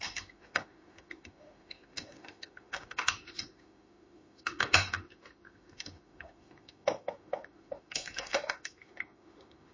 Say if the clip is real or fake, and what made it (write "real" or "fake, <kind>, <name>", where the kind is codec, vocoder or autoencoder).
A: fake, autoencoder, DAC-VAE